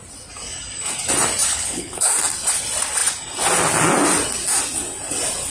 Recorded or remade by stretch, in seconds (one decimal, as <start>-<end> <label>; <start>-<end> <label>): 0.0-1.5 recorded; 1.5-2.1 remade; 2.1-5.5 recorded